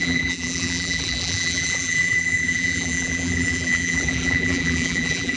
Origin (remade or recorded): remade